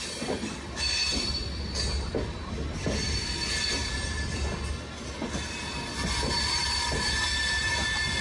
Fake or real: real